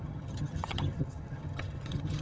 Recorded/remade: remade